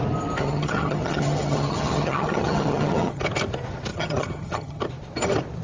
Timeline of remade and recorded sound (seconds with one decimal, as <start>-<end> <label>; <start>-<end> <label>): 0.0-0.4 recorded; 0.4-3.2 remade; 3.2-3.9 recorded; 3.9-4.8 remade; 4.8-5.6 recorded